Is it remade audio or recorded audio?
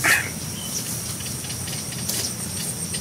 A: recorded